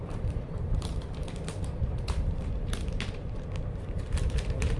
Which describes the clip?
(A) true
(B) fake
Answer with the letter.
B